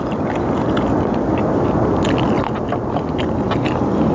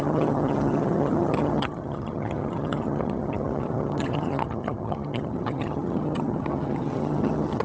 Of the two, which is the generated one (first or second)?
second